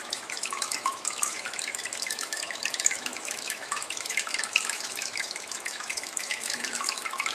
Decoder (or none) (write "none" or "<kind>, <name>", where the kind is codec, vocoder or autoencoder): autoencoder, DAC-VAE